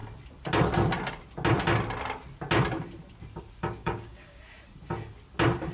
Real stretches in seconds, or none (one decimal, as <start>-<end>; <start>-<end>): 0.0-3.8; 4.4-5.7